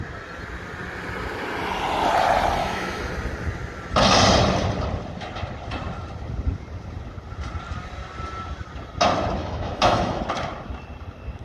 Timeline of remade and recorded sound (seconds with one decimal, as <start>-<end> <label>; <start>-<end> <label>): 0.0-2.6 recorded; 2.6-3.1 remade; 3.1-9.4 recorded; 9.4-10.2 remade; 10.2-11.4 recorded